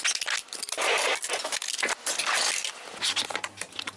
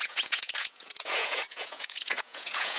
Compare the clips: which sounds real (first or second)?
first